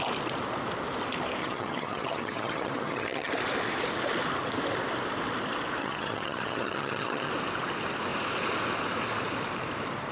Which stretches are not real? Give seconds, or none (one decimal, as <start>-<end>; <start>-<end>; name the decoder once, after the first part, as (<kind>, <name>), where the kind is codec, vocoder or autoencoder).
1.4-3.3 (vocoder, HiFi-GAN); 5.8-7.3